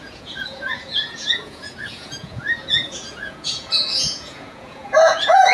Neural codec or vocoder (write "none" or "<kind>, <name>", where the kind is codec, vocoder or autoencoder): vocoder, Vocos